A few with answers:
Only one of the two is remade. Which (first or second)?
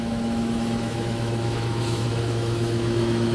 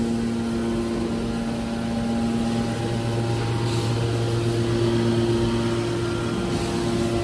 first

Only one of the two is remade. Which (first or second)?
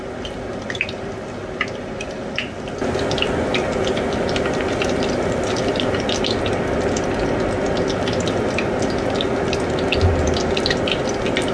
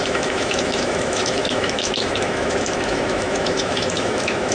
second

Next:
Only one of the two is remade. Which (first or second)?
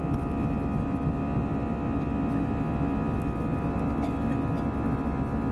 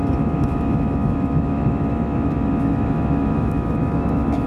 second